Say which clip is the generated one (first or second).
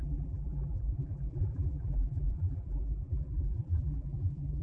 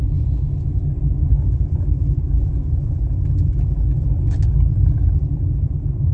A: first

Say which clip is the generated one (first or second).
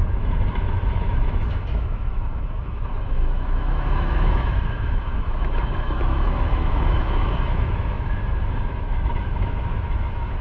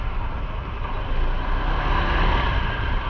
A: first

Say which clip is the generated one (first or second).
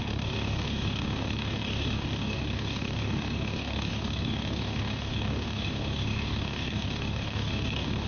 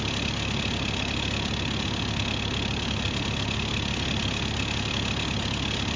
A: first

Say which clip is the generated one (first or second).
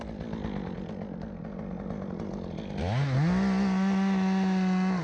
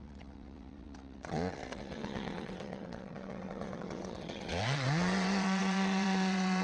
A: second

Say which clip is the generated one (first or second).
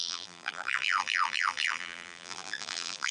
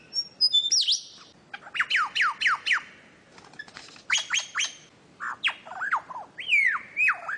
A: first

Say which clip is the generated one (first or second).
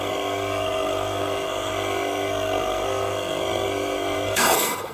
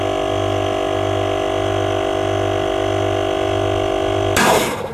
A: first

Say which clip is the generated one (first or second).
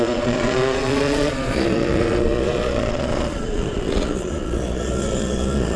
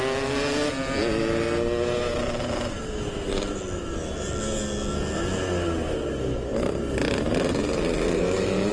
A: first